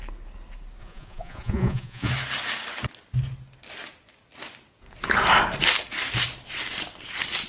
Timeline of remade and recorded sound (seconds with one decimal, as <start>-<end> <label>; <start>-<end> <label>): 0.0-0.8 recorded; 0.8-2.1 remade; 2.1-7.5 recorded